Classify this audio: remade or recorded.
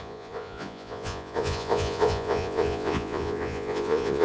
remade